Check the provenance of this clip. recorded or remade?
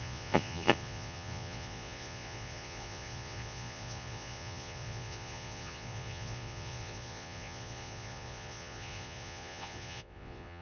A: remade